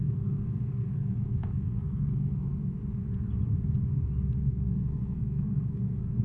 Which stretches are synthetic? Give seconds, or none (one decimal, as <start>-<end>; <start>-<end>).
0.0-2.5; 4.5-6.2